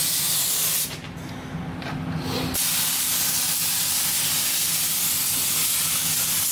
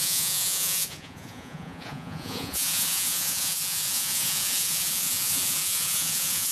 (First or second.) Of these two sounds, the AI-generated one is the second